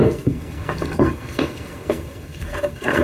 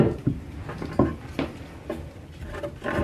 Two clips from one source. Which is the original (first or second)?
second